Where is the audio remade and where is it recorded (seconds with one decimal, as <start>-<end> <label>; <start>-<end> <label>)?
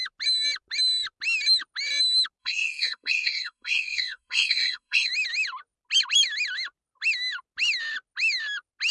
0.0-2.4 recorded; 2.4-5.1 remade; 5.1-8.9 recorded